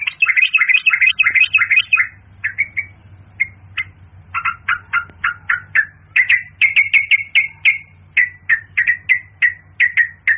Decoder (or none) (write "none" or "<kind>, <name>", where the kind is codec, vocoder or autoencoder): none